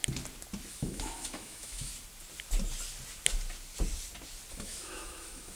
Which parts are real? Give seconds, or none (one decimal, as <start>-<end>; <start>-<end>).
0.0-0.7; 1.9-4.5